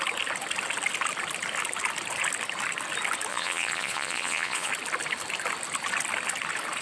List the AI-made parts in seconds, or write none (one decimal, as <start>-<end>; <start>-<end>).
3.3-4.7